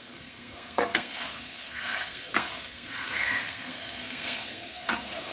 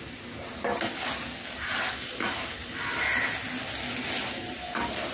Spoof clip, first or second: first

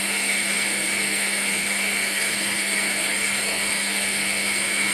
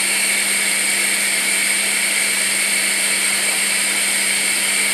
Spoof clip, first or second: first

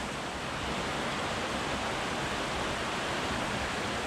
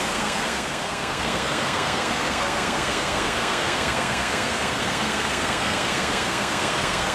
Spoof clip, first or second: second